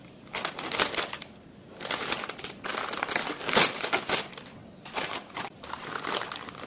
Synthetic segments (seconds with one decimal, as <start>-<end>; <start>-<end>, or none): 4.6-5.9